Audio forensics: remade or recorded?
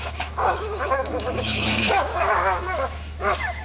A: remade